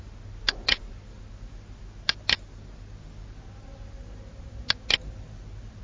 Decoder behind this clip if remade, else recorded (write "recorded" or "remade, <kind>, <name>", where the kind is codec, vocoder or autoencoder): recorded